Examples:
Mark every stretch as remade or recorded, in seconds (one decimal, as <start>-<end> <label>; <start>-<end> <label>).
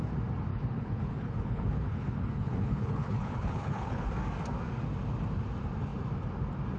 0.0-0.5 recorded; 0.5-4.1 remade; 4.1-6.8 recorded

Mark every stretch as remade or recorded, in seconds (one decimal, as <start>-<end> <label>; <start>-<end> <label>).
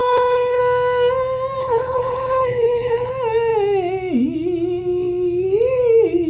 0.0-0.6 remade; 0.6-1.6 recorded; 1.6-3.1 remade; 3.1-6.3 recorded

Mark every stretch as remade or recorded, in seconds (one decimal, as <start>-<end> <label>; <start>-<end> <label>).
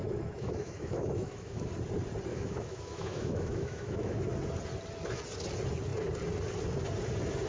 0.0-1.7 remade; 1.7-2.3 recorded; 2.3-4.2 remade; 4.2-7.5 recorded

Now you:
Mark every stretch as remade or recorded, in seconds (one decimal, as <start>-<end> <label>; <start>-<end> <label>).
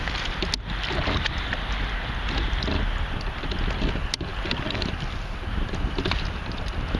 0.0-7.0 recorded